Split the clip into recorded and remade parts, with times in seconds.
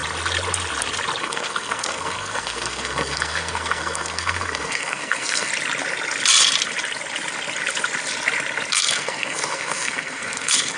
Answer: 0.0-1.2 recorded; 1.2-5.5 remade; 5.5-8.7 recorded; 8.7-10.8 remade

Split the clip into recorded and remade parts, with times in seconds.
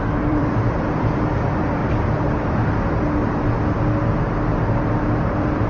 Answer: 0.0-1.8 remade; 1.8-5.2 recorded; 5.2-5.7 remade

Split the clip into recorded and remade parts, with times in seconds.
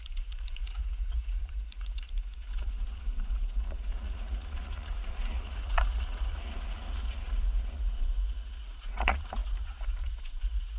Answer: 0.0-10.8 remade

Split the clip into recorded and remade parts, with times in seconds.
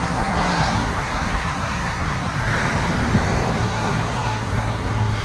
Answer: 0.0-2.5 remade; 2.5-3.5 recorded; 3.5-5.2 remade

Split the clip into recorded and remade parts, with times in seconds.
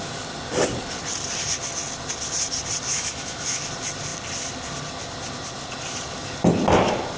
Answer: 0.0-2.9 recorded; 2.9-3.6 remade; 3.6-7.2 recorded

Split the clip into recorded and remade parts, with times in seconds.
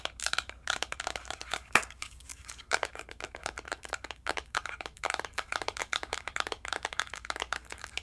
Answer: 0.0-8.0 remade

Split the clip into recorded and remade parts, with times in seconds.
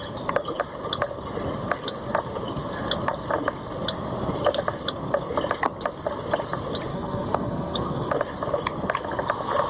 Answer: 0.0-6.9 recorded; 6.9-8.1 remade; 8.1-9.7 recorded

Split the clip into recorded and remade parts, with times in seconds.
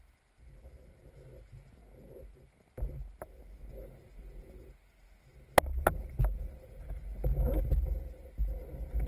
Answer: 0.0-9.1 recorded